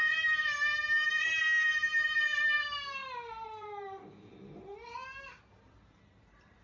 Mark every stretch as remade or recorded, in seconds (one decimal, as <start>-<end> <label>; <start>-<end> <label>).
0.0-6.6 remade

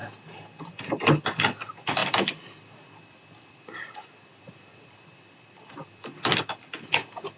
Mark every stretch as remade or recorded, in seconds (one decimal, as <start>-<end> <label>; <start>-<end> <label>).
0.0-2.0 recorded; 2.0-6.4 remade; 6.4-7.4 recorded

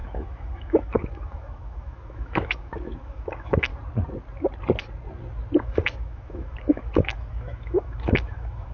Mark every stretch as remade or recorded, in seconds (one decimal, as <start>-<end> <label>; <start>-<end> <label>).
0.0-3.7 remade; 3.7-5.6 recorded; 5.6-8.7 remade

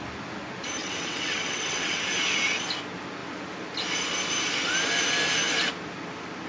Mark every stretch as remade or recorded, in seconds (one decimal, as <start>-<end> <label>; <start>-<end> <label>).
0.0-0.8 recorded; 0.8-2.0 remade; 2.0-6.5 recorded

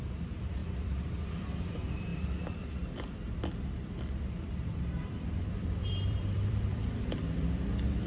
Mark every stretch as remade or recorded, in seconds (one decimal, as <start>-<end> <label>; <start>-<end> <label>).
0.0-8.1 remade